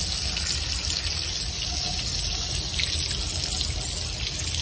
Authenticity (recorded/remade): recorded